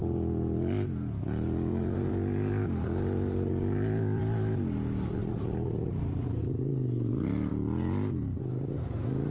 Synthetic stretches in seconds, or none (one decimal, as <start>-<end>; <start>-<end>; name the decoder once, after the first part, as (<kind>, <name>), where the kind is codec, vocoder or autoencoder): 0.0-4.2 (vocoder, BigVGAN v2); 5.2-6.4; 7.5-8.4